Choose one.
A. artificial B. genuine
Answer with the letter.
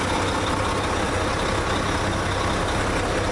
B